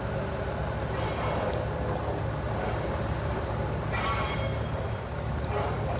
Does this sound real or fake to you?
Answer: real